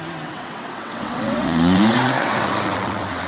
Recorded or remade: remade